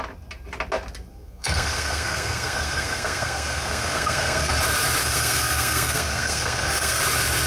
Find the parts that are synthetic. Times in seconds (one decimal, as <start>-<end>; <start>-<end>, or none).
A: 1.1-4.5; 5.0-7.0